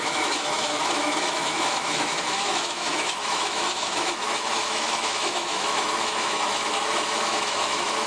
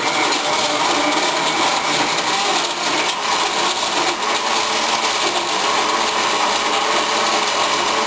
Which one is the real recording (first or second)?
second